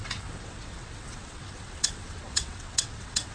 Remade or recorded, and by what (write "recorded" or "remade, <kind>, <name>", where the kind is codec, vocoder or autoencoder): remade, vocoder, WaveNeXt